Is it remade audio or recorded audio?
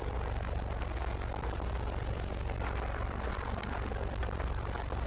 recorded